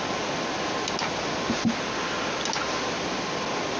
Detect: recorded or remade recorded